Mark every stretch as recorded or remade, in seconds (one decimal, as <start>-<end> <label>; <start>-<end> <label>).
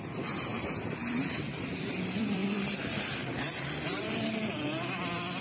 0.0-5.4 remade